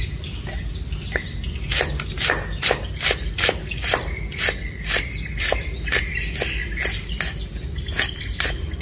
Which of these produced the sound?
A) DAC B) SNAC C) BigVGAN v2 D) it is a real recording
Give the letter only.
D